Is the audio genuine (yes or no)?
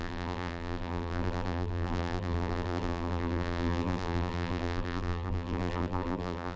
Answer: no